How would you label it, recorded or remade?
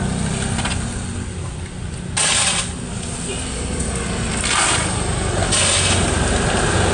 recorded